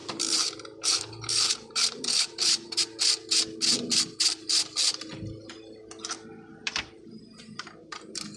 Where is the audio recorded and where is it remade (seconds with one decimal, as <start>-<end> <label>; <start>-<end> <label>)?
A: 0.0-2.8 remade; 2.8-6.5 recorded; 6.5-7.2 remade; 7.2-8.4 recorded